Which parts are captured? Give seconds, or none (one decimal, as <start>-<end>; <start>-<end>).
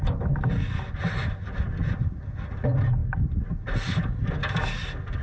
0.0-5.2